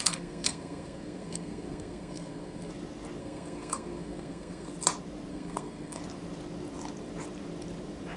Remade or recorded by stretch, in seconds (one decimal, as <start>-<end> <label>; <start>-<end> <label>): 0.0-2.7 remade; 2.7-3.2 recorded; 3.2-4.7 remade; 4.7-5.3 recorded; 5.3-6.0 remade; 6.0-8.2 recorded